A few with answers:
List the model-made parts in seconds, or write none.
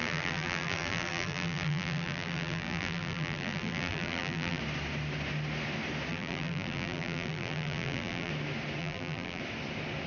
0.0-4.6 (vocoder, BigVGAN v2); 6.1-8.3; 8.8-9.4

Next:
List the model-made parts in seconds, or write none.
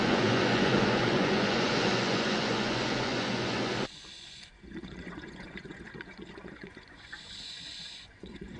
0.0-8.6 (vocoder, Vocos)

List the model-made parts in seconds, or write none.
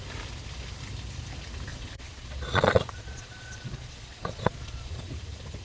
1.7-5.1 (vocoder, Vocos)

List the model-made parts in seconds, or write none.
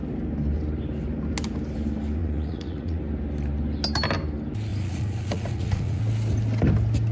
2.2-3.0 (vocoder, Vocos); 4.7-6.0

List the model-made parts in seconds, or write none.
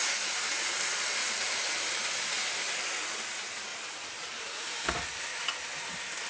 1.2-2.3 (vocoder, BigVGAN v2); 3.7-5.3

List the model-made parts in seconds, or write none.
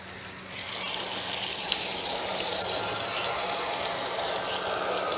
1.5-4.6 (vocoder, BigVGAN v2)